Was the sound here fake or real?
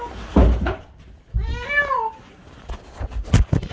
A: real